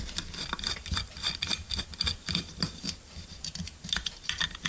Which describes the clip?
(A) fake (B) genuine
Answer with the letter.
B